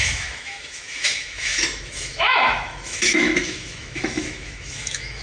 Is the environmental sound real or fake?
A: fake